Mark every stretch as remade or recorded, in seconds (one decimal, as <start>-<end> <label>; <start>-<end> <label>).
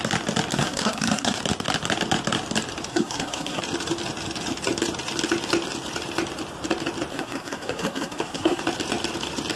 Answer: 0.0-0.5 recorded; 0.5-1.4 remade; 1.4-2.9 recorded; 2.9-3.6 remade; 3.6-7.1 recorded; 7.1-8.6 remade; 8.6-9.6 recorded